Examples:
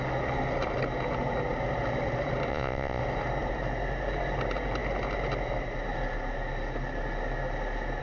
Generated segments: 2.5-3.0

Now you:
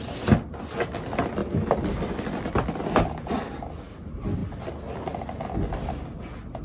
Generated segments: none